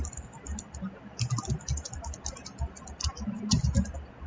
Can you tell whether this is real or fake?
real